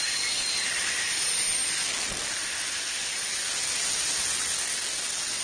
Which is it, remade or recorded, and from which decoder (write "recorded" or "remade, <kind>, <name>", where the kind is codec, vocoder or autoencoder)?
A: recorded